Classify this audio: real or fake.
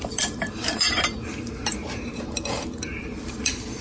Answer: fake